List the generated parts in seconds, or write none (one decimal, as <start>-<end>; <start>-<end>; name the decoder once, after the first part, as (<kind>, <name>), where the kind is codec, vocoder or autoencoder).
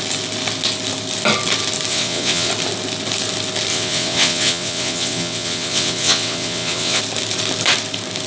1.9-2.5 (vocoder, WaveNeXt); 3.7-7.0